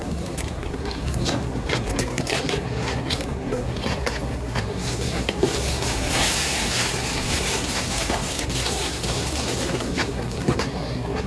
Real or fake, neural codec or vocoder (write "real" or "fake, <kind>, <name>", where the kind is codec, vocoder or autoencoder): fake, codec, SNAC